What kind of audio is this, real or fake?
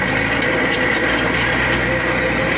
real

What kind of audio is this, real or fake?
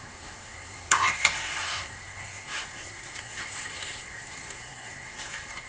fake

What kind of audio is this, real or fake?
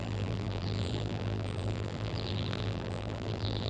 fake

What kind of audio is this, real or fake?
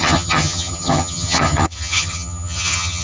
fake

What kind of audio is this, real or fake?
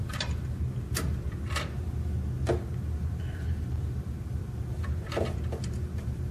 real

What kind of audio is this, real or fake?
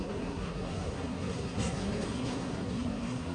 fake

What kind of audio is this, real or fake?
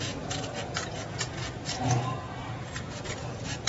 fake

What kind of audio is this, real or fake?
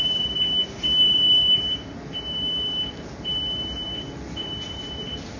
fake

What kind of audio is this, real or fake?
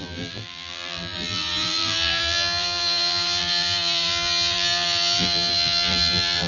fake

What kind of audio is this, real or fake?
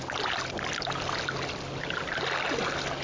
real